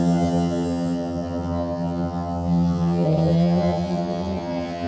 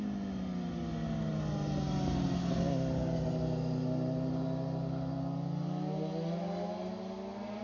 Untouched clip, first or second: second